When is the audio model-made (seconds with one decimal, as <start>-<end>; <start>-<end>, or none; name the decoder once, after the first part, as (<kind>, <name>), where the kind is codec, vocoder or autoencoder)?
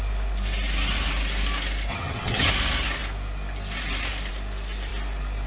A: 1.9-2.5 (vocoder, HiFi-GAN)